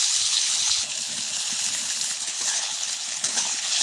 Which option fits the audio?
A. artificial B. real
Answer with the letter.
A